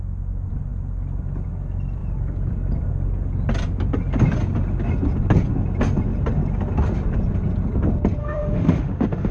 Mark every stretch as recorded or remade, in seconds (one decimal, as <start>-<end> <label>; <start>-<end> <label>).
0.0-8.2 recorded; 8.2-9.3 remade